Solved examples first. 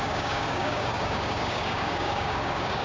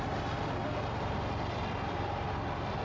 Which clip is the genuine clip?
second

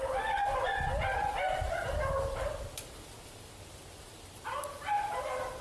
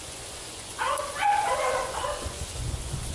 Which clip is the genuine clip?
first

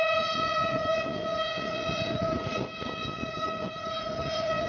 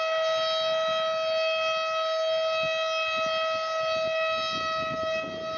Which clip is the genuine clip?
second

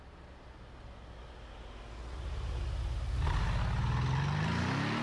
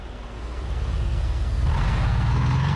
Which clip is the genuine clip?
first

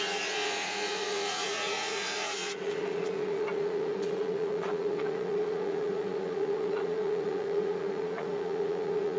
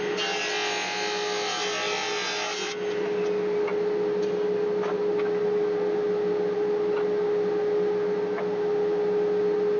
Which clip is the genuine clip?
second